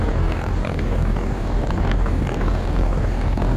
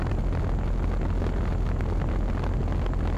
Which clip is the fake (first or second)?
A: first